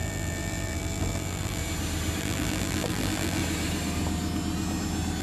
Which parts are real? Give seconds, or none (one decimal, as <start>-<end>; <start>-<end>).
1.6-2.2; 3.4-5.2